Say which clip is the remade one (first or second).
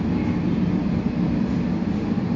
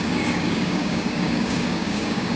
second